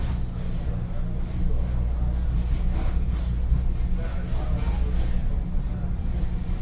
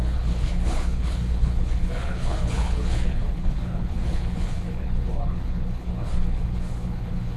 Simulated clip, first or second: second